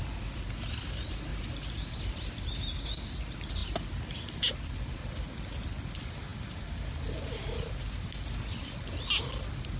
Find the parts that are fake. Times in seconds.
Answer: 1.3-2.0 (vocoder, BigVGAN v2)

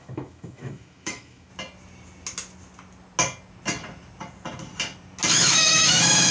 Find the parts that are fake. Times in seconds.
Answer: 0.0-1.5 (autoencoder, DAC-VAE); 5.3-6.3

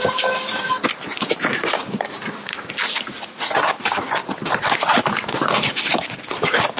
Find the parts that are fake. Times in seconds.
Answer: 0.0-0.8 (codec, DAC); 1.3-2.5; 3.6-4.2; 5.1-6.8

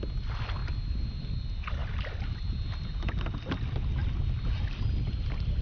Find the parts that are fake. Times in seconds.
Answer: 0.6-1.3 (vocoder, BigVGAN v2); 4.0-5.6

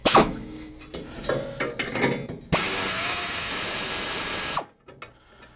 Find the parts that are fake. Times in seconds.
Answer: 0.0-0.7 (autoencoder, DAC-VAE); 2.9-3.5

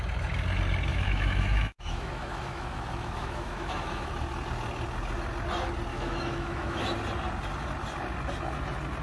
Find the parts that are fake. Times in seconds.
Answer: 0.9-4.1 (autoencoder, DAC-VAE); 5.9-6.8